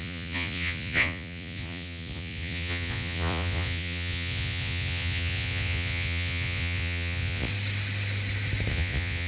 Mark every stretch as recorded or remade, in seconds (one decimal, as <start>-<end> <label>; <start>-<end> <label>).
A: 0.0-7.5 remade; 7.5-8.7 recorded; 8.7-9.3 remade